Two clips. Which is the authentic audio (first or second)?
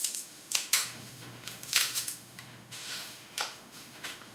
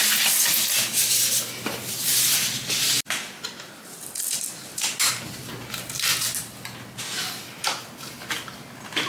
second